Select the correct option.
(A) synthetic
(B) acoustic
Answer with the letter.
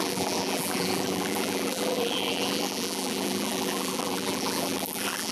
A